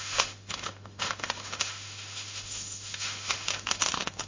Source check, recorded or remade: remade